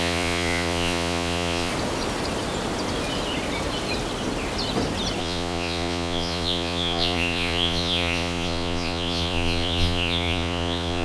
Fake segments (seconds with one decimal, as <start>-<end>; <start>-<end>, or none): 0.0-1.7; 5.2-11.0